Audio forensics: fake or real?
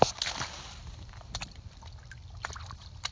real